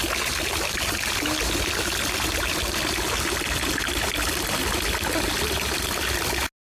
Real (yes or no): yes